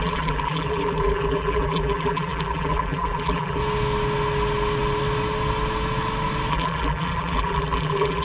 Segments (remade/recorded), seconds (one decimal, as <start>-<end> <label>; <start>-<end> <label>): 0.0-3.6 remade; 3.6-6.5 recorded; 6.5-8.2 remade